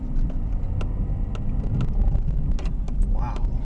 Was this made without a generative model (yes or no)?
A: yes